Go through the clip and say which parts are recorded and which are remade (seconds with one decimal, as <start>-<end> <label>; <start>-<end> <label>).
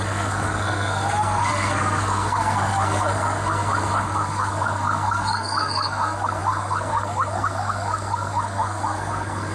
0.0-9.5 remade